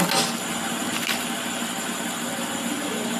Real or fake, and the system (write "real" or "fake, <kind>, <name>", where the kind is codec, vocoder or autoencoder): real